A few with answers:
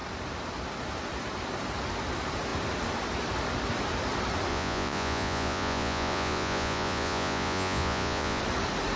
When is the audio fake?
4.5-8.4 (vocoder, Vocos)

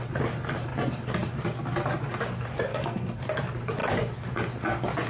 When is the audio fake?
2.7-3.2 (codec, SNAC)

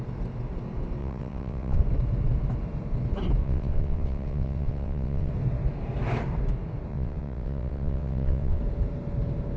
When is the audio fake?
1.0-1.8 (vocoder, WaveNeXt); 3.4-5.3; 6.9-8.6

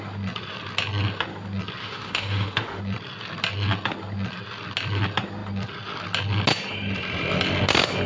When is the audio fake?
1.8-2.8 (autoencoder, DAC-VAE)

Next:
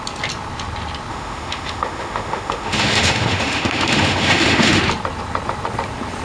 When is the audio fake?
1.1-4.8 (autoencoder, DAC-VAE)